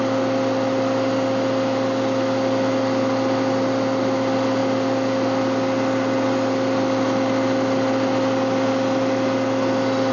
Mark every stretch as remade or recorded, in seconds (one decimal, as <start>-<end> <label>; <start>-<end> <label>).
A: 0.0-10.1 recorded